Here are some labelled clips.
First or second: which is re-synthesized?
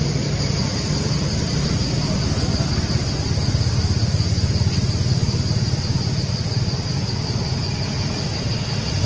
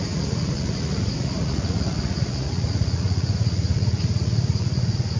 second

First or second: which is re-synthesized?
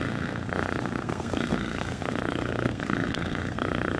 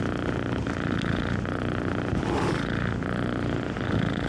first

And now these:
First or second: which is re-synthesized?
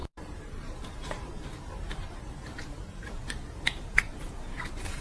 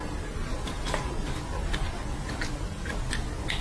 first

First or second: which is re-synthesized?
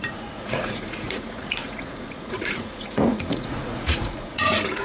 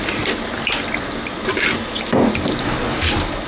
first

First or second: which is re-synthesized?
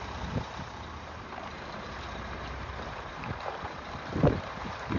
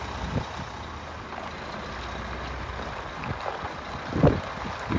first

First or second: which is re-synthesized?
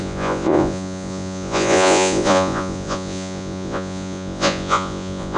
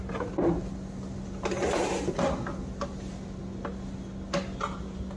first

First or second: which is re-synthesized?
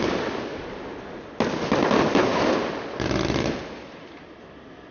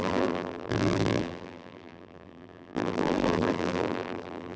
second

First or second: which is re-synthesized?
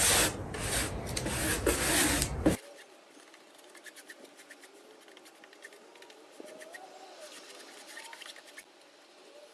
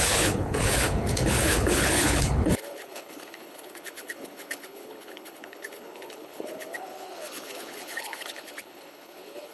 second